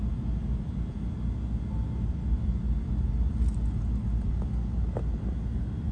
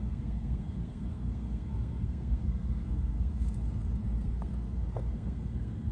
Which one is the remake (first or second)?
second